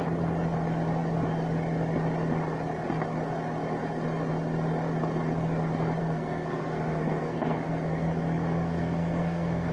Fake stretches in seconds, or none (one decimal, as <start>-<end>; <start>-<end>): 6.0-9.7